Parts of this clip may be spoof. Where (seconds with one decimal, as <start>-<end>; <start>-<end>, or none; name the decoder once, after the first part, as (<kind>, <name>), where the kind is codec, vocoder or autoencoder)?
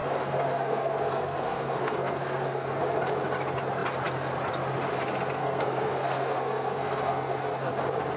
0.0-2.8 (codec, SNAC); 5.4-7.7